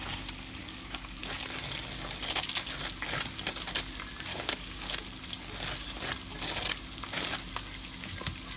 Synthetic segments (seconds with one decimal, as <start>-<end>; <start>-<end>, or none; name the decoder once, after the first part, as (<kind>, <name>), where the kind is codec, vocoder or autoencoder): 0.6-1.2 (codec, DAC); 4.3-5.0